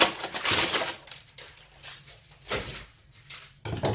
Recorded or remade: recorded